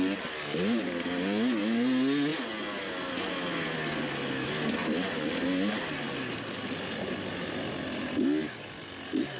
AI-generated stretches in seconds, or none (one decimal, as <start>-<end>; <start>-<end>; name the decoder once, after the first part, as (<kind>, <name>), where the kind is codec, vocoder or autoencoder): none